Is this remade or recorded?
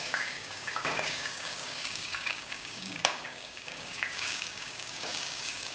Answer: remade